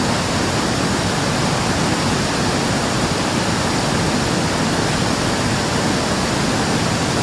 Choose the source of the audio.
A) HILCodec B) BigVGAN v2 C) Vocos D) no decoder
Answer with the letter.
D